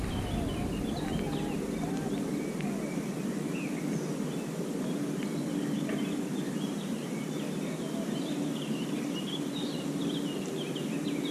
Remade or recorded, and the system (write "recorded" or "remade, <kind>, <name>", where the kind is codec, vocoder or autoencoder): recorded